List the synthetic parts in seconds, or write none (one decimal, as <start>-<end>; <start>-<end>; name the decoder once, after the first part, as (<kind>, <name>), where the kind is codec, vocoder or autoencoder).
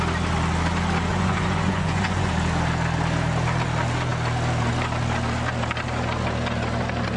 1.1-2.3 (vocoder, Vocos)